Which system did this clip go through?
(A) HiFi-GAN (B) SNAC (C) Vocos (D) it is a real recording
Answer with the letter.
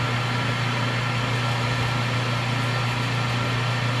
D